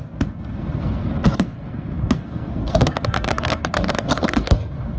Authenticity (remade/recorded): remade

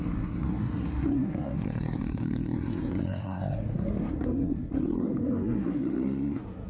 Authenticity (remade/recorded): remade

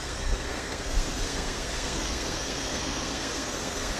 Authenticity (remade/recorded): remade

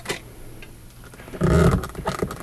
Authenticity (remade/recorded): recorded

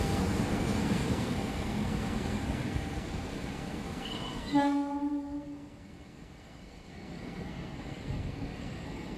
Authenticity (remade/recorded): remade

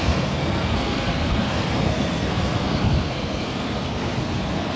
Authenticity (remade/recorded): remade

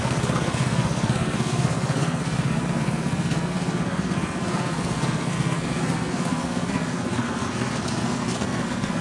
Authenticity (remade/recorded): remade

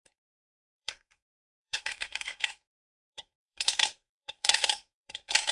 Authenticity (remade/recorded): remade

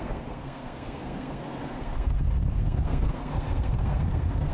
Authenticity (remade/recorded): remade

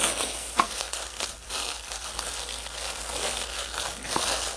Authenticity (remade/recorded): remade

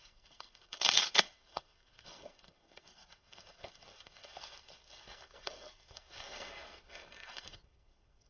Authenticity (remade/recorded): remade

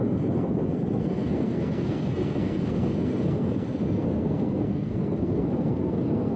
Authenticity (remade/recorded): remade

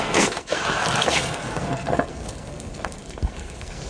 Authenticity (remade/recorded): remade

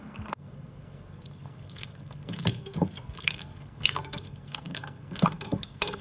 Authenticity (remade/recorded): remade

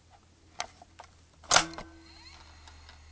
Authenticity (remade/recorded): recorded